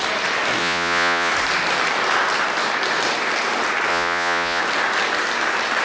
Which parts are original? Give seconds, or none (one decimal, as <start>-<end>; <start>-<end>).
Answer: 0.0-0.6; 1.3-3.9; 4.6-5.8